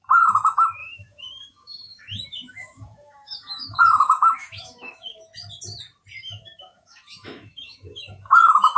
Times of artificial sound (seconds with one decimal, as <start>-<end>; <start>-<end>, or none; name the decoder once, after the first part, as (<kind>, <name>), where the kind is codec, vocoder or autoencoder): 0.0-5.3 (autoencoder, DAC-VAE); 6.2-8.8